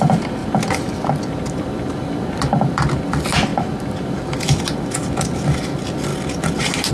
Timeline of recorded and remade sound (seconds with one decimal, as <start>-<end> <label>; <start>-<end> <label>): 0.0-0.4 recorded; 0.4-2.9 remade; 2.9-6.1 recorded; 6.1-6.9 remade